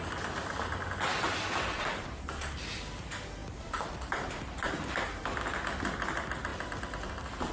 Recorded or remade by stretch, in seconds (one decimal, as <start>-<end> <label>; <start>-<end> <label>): 0.0-3.4 recorded; 3.4-4.9 remade; 4.9-7.5 recorded